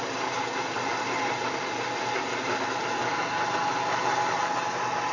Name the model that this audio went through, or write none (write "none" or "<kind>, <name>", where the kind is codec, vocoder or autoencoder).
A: none